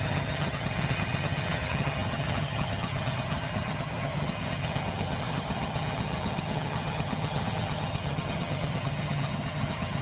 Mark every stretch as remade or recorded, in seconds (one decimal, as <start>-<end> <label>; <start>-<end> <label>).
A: 0.0-10.0 remade